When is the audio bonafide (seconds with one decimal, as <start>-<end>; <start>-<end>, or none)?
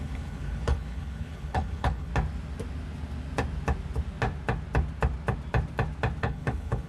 2.1-6.2